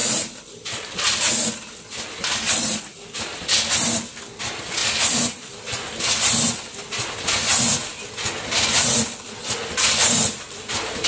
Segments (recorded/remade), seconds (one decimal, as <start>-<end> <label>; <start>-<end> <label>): 0.0-11.1 recorded